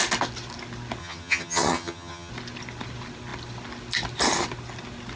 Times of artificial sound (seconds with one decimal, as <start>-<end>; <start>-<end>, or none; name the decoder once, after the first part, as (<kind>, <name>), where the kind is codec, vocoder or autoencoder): 1.0-2.3 (vocoder, HiFi-GAN)